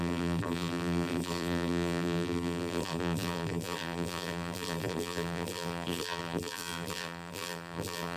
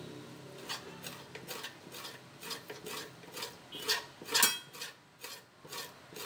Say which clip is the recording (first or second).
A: second